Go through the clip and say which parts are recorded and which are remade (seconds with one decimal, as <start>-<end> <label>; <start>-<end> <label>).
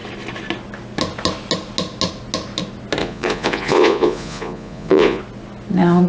0.0-3.0 recorded; 3.0-5.2 remade; 5.2-6.1 recorded